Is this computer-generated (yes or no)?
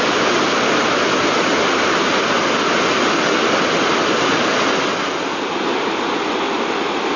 no